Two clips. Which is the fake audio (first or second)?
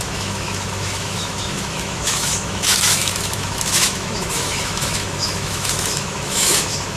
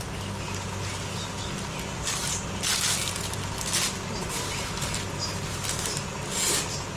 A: first